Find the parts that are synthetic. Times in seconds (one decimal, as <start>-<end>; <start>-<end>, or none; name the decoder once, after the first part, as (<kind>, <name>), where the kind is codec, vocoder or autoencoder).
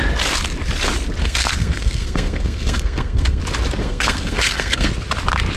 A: 1.2-3.4 (codec, SNAC); 3.8-4.9